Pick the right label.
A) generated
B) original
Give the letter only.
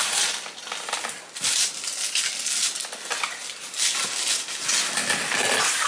B